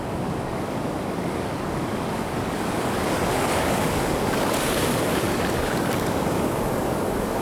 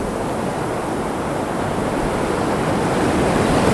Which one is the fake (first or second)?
first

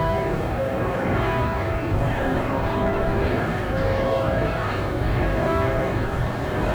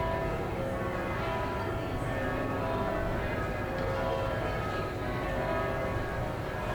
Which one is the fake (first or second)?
first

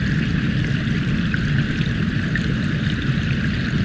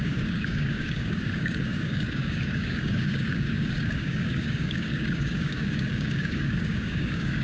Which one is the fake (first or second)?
second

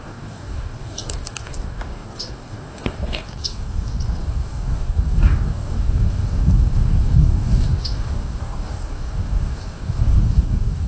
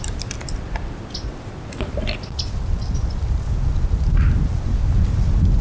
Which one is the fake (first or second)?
first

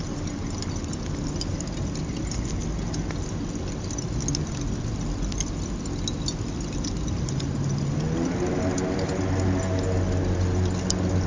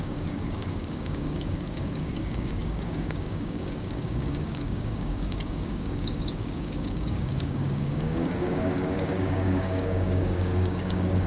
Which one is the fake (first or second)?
second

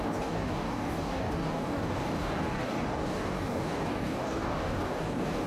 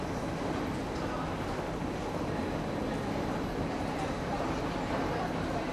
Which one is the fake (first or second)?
first